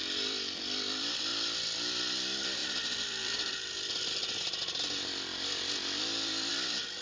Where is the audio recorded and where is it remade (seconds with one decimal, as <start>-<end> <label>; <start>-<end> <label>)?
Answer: 0.0-1.3 remade; 1.3-2.0 recorded; 2.0-7.0 remade